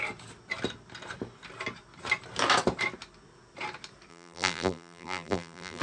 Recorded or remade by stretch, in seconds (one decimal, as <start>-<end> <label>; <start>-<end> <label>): 0.0-4.1 recorded; 4.1-5.8 remade